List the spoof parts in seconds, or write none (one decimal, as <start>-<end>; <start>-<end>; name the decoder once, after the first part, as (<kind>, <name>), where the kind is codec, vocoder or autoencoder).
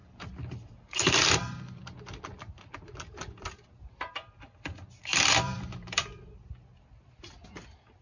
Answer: 5.1-6.2 (vocoder, BigVGAN v2)